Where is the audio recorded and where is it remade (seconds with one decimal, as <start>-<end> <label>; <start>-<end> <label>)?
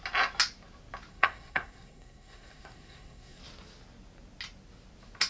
0.0-1.1 recorded; 1.1-3.4 remade; 3.4-5.3 recorded